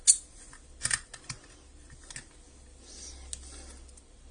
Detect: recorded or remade recorded